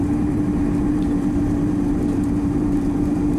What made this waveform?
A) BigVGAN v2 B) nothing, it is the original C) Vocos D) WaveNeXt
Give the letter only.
A